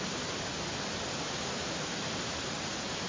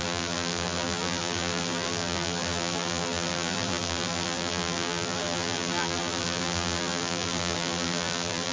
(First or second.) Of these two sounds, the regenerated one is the second